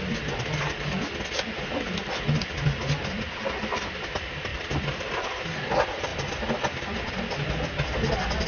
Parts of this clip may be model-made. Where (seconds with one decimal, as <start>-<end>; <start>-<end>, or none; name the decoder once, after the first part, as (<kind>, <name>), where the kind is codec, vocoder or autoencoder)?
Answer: none